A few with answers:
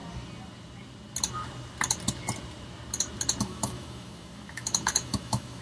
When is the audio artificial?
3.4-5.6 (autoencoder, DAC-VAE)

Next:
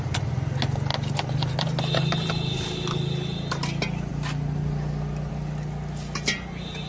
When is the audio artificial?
none

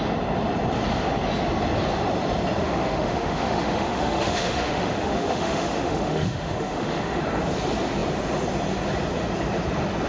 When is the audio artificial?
2.6-7.2 (autoencoder, DAC-VAE)

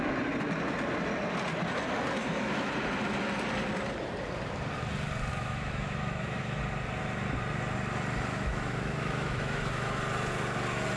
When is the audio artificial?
2.2-2.7 (autoencoder, DAC-VAE); 5.3-6.6; 8.3-10.0